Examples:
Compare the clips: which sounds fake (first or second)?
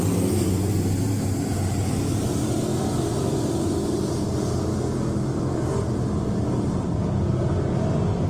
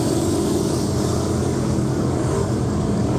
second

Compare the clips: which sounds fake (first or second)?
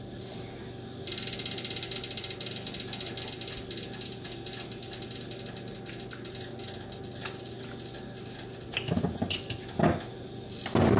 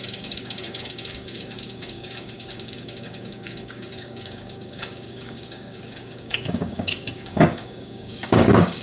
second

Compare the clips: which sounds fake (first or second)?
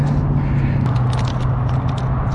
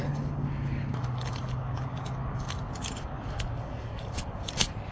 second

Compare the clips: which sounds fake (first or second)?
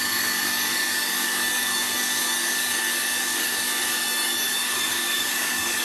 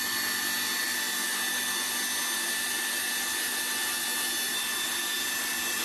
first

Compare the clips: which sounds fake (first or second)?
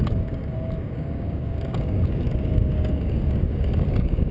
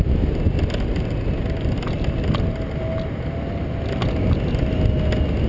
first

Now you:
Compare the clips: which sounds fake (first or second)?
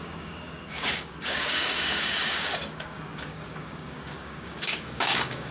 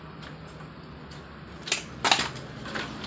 first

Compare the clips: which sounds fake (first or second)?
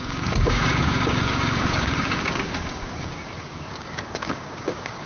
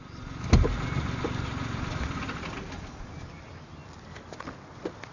first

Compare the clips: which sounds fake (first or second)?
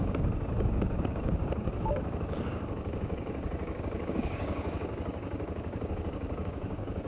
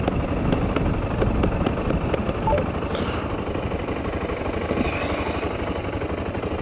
first